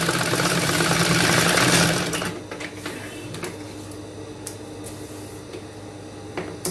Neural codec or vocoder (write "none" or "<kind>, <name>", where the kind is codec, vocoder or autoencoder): none